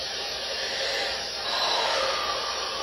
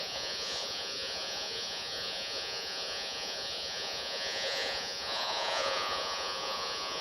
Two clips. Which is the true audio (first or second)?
first